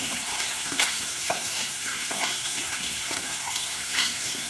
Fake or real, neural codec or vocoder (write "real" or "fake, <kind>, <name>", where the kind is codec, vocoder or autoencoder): fake, codec, SNAC